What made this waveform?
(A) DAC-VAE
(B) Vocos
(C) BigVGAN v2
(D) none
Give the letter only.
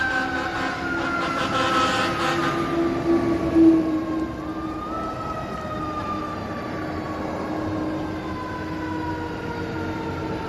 D